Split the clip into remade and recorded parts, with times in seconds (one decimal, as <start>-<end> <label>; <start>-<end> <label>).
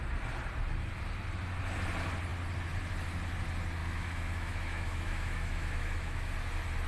0.0-3.8 recorded; 3.8-6.3 remade; 6.3-6.9 recorded